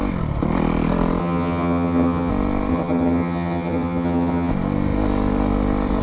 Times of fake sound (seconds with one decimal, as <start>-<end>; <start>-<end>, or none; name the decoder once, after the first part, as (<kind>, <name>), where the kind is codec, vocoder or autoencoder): 1.2-2.3 (vocoder, HiFi-GAN); 2.7-4.5